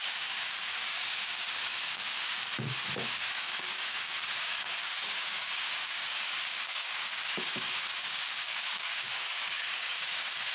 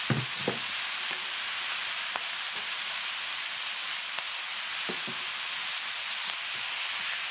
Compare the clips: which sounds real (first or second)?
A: second